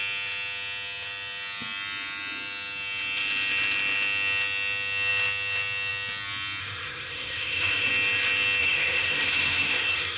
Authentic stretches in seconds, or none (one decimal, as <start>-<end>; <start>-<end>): 0.0-6.6; 7.9-8.6